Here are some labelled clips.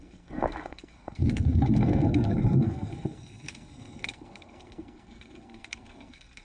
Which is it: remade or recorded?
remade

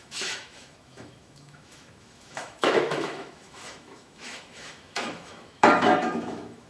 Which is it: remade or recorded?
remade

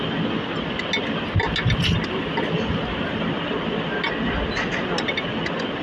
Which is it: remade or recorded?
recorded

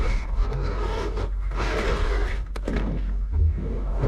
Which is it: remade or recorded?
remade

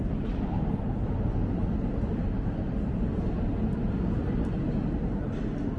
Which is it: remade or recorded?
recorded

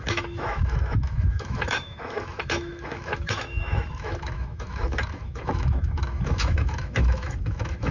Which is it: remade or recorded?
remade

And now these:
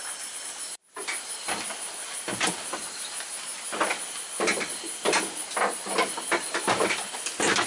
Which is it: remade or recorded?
recorded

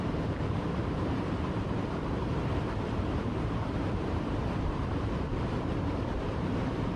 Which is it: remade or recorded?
remade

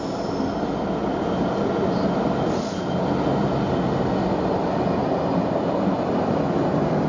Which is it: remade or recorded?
recorded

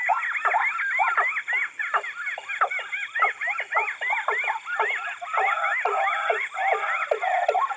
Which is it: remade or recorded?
recorded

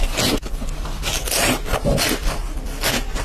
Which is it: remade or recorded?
recorded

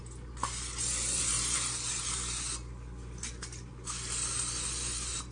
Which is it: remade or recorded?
recorded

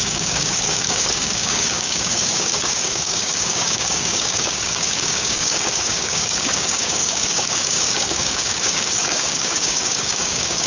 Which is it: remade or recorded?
remade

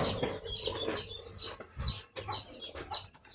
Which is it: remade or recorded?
recorded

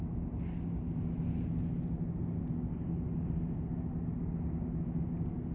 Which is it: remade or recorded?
recorded